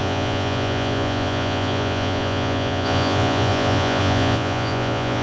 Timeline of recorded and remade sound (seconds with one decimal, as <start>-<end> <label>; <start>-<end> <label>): 0.0-5.2 remade